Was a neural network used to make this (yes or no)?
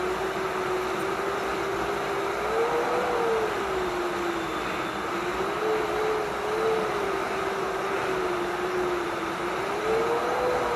no